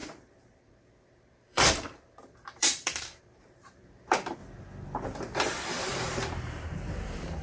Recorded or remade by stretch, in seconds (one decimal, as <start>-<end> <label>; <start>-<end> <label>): 0.0-4.4 remade; 4.4-5.4 recorded; 5.4-7.4 remade